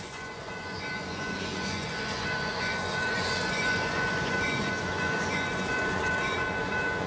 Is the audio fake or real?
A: fake